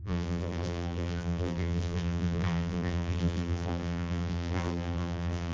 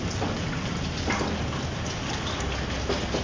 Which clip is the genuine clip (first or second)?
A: second